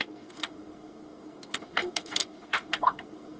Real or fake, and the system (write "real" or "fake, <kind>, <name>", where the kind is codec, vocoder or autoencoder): fake, codec, SNAC